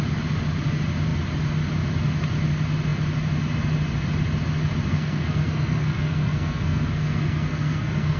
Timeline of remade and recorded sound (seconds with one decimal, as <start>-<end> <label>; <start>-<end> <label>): 0.0-4.9 recorded; 4.9-8.2 remade